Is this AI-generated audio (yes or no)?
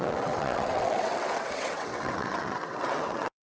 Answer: yes